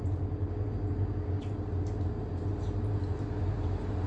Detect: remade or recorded recorded